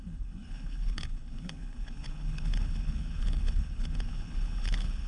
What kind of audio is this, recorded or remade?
remade